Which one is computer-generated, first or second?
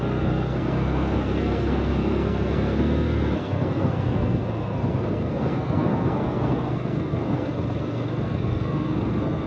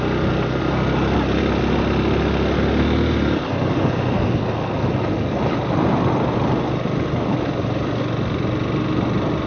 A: first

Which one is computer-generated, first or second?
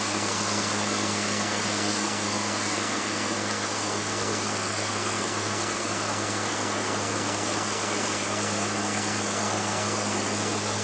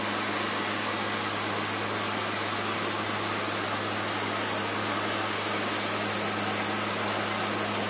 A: first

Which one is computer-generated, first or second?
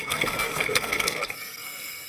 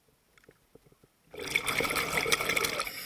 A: first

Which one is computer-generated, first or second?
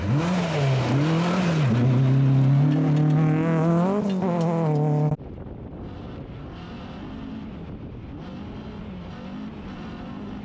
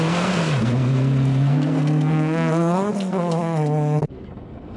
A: second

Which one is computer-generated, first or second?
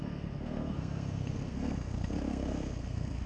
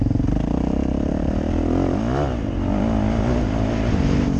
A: first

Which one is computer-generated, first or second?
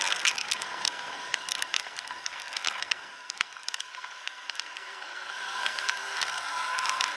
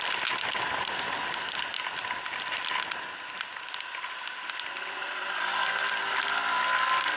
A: first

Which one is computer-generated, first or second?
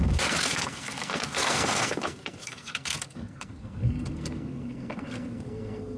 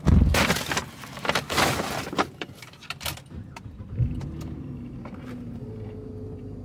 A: first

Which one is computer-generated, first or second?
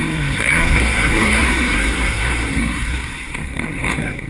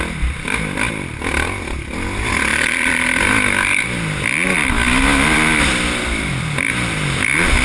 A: first